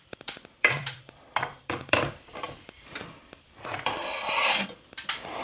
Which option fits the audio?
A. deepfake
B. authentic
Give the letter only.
A